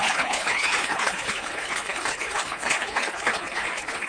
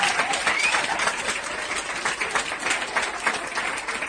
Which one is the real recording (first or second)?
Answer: second